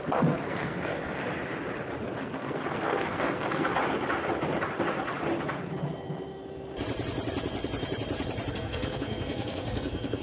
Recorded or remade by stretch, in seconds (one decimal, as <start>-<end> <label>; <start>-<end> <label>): 0.0-1.2 remade; 1.2-2.2 recorded; 2.2-3.7 remade; 3.7-8.5 recorded; 8.5-10.2 remade

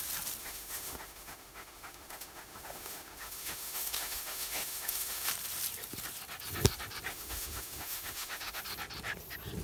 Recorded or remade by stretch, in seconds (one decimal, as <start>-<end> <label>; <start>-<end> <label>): 0.0-0.4 recorded; 0.4-5.3 remade; 5.3-7.1 recorded; 7.1-8.6 remade; 8.6-9.6 recorded

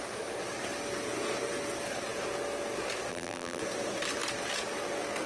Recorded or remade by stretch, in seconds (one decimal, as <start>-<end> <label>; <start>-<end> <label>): 0.0-3.1 recorded; 3.1-3.6 remade; 3.6-5.3 recorded

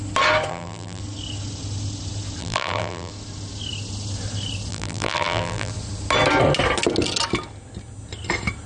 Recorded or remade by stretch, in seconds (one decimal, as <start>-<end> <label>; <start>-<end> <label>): 0.0-0.5 recorded; 0.5-1.0 remade; 1.0-2.4 recorded; 2.4-3.1 remade; 3.1-4.7 recorded; 4.7-5.7 remade; 5.7-8.7 recorded

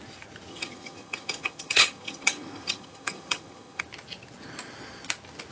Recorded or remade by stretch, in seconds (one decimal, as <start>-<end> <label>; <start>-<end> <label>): 0.0-0.5 recorded; 0.5-3.8 remade; 3.8-5.5 recorded